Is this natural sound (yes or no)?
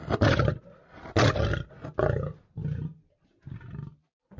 yes